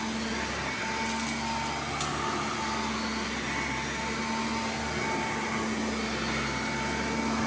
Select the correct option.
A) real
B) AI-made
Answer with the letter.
A